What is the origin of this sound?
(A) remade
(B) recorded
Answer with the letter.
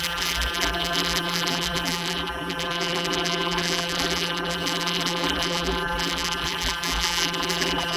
A